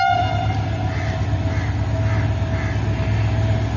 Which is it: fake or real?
real